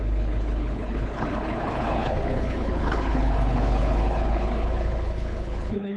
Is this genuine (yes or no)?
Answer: no